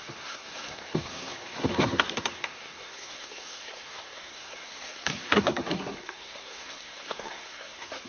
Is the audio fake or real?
fake